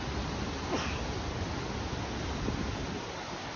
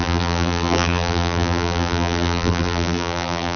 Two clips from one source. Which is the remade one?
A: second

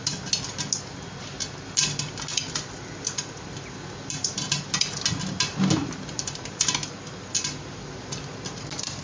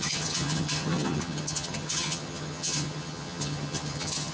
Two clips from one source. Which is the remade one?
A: second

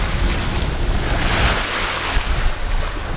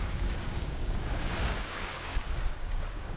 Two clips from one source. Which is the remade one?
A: second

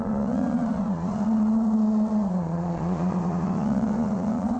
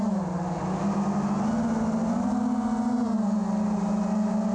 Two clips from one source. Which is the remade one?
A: first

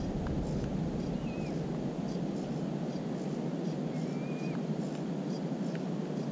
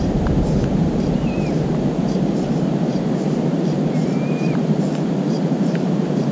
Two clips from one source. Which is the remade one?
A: second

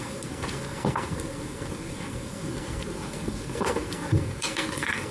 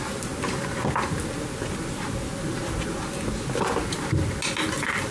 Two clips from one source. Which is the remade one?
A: first